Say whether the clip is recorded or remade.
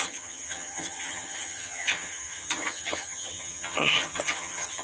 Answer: remade